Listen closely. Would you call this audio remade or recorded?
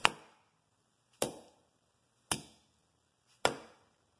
recorded